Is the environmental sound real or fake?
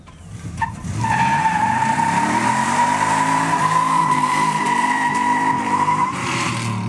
fake